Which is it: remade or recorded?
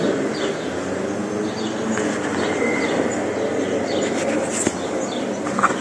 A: recorded